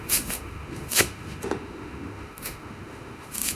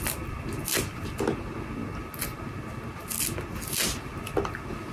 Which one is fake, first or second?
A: first